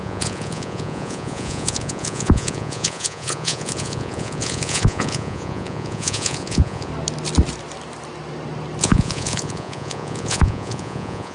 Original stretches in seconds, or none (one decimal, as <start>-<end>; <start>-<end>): 6.9-8.8